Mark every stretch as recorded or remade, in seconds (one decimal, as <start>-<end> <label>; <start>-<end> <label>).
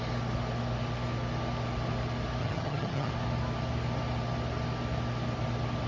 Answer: 0.0-2.4 recorded; 2.4-3.1 remade; 3.1-5.9 recorded